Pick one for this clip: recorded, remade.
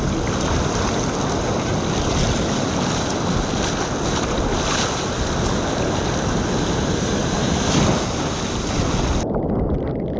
recorded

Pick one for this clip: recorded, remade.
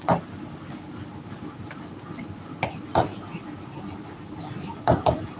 recorded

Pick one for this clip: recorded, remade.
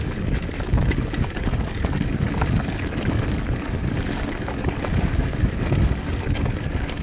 remade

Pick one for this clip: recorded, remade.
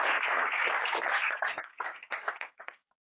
remade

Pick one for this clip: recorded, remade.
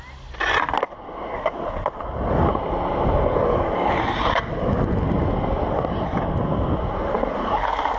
recorded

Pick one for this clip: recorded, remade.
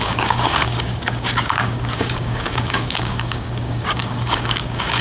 remade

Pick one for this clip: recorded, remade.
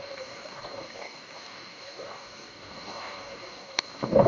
remade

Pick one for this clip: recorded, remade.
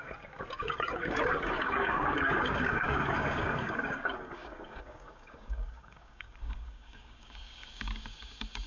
remade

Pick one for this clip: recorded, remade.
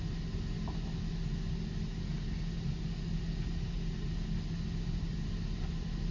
recorded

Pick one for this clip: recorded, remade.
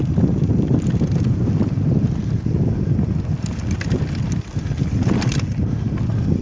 recorded